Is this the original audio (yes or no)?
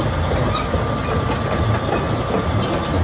yes